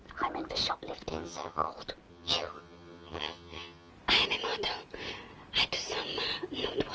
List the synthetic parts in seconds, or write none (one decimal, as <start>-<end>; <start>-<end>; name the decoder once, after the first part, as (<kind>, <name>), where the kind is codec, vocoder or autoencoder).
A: 1.1-1.7 (vocoder, HiFi-GAN); 2.1-3.9